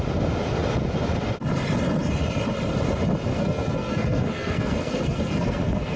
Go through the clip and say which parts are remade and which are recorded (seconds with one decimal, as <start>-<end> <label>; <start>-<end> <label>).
0.0-3.3 recorded; 3.3-6.0 remade